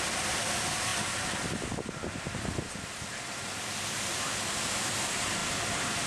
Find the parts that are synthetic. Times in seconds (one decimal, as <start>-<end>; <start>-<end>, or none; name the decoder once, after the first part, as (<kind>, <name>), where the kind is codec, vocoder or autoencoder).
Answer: none